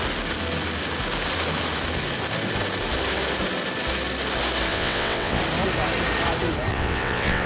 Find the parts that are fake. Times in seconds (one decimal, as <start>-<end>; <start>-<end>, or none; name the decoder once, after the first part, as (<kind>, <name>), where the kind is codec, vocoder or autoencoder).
4.7-5.4 (vocoder, WaveNeXt); 6.7-7.5